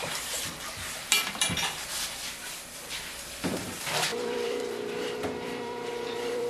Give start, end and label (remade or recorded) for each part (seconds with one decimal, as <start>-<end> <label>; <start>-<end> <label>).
0.0-6.5 remade